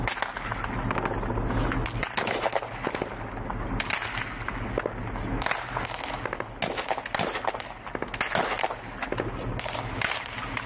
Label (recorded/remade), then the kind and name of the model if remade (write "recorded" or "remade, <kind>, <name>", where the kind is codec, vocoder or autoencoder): recorded